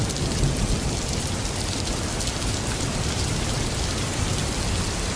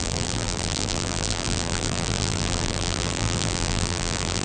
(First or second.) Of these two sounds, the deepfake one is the second